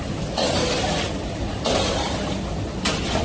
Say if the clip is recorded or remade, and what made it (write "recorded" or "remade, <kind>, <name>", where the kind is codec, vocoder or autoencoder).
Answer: recorded